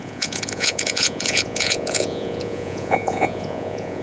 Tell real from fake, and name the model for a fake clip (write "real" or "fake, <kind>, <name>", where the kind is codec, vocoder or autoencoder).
fake, vocoder, Vocos